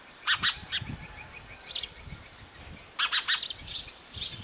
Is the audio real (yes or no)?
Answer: no